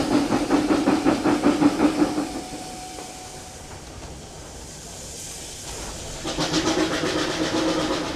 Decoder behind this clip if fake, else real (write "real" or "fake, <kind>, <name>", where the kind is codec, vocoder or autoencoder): real